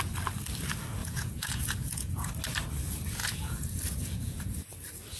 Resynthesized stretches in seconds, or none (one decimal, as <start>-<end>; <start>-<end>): 1.0-2.3; 3.2-4.7